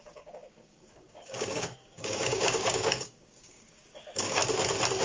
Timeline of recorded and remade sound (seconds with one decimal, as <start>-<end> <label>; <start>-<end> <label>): 0.0-4.4 remade; 4.4-5.0 recorded